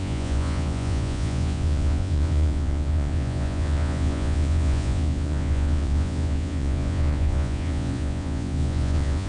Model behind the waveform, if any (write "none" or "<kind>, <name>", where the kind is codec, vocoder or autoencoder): vocoder, Vocos